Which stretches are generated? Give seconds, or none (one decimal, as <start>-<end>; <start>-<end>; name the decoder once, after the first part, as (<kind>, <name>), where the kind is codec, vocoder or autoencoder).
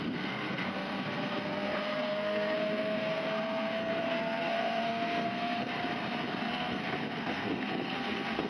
0.0-5.8 (codec, SNAC); 6.5-8.5